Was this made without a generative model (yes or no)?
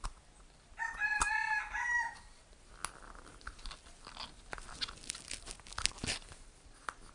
yes